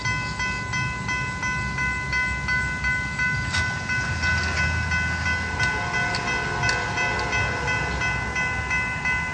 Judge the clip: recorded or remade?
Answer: recorded